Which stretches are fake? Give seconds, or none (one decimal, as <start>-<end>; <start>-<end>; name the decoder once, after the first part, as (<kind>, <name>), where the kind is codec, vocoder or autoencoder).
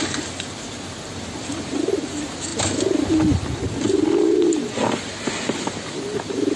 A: none